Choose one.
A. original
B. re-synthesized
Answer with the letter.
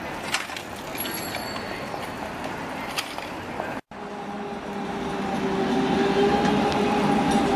A